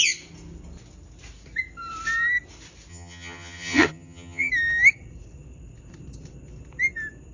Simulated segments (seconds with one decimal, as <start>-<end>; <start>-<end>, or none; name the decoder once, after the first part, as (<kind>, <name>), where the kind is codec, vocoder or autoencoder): 2.9-4.5 (vocoder, HiFi-GAN)